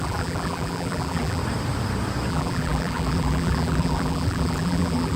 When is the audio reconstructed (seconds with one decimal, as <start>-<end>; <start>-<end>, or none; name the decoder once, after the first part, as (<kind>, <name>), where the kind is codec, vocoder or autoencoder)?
0.0-1.4 (vocoder, BigVGAN v2); 2.3-5.2